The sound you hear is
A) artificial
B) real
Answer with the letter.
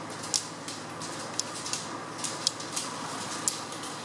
B